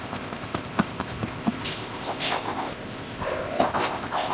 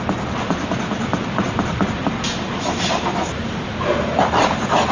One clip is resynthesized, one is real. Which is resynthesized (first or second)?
first